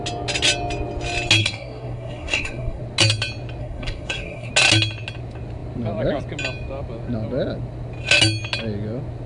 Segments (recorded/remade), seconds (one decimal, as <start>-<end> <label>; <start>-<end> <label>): 0.0-1.4 recorded; 1.4-2.8 remade; 2.8-3.6 recorded; 3.6-4.5 remade; 4.5-9.3 recorded